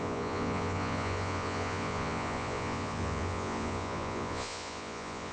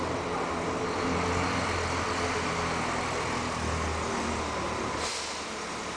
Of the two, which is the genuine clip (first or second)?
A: second